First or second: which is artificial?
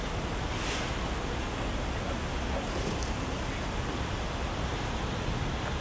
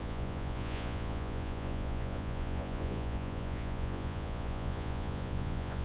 second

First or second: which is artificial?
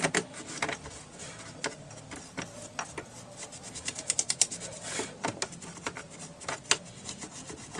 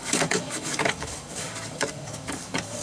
second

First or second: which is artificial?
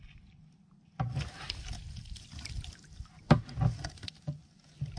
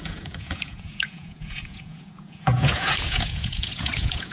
second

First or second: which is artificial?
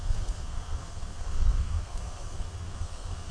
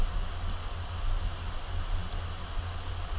first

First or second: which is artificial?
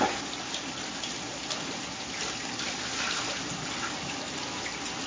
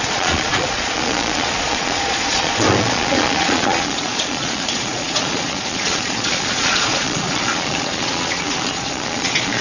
second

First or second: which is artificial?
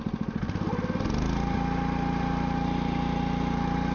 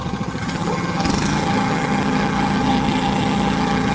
second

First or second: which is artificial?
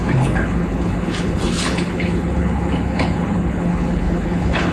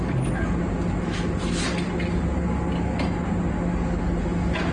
first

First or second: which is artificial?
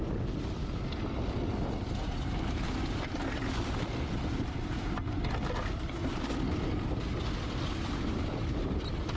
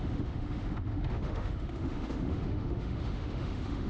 second